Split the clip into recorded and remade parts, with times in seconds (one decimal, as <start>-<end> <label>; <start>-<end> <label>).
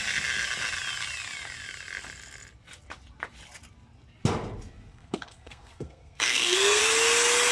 0.0-4.9 recorded; 4.9-6.8 remade; 6.8-7.5 recorded